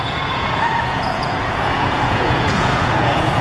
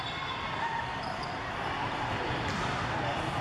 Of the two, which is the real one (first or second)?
second